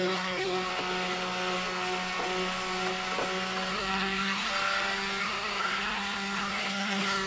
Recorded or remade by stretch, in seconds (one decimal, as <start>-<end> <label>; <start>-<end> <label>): 0.0-0.7 remade; 0.7-3.7 recorded; 3.7-4.5 remade; 4.5-5.2 recorded; 5.2-7.3 remade